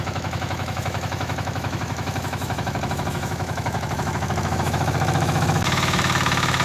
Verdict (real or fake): fake